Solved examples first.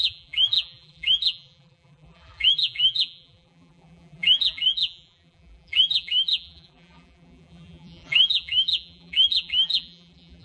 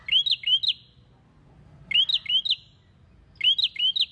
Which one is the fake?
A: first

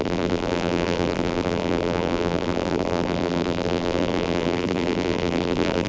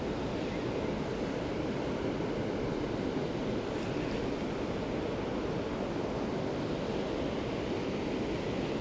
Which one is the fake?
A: first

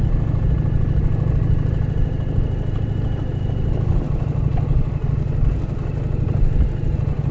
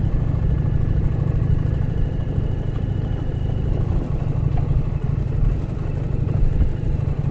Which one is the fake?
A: second